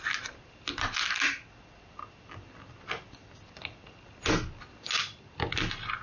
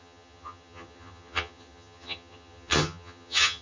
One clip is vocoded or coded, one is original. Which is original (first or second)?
first